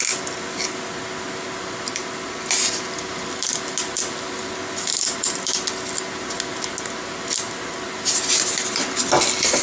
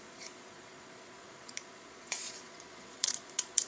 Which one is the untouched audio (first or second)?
first